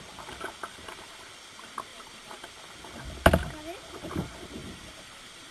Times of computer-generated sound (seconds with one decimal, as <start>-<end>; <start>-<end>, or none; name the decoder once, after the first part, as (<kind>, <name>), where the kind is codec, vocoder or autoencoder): 0.7-1.3 (vocoder, BigVGAN v2); 1.9-2.5; 4.6-5.5